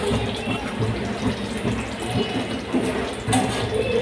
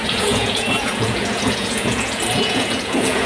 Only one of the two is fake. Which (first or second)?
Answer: second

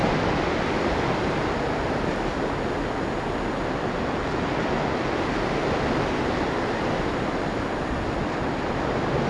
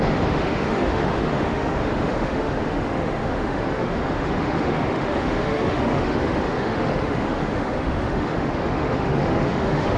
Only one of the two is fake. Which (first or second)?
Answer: second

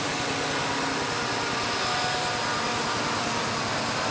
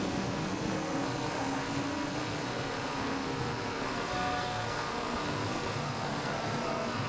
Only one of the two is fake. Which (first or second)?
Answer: second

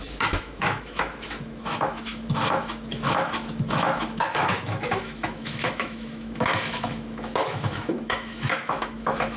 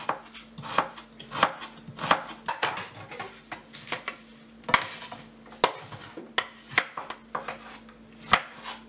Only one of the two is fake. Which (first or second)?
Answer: first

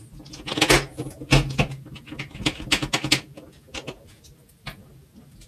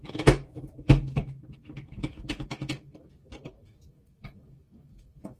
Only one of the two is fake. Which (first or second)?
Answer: second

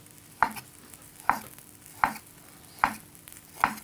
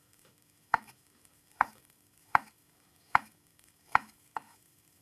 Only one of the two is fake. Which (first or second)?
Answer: second